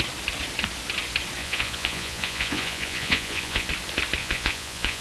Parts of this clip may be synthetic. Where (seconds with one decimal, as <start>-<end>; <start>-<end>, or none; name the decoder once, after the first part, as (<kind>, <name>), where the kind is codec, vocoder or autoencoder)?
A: 1.4-3.7 (vocoder, Vocos); 4.2-5.0